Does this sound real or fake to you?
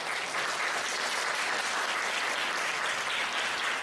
real